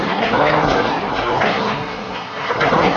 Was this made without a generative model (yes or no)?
no